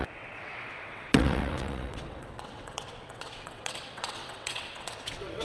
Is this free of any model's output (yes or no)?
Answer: no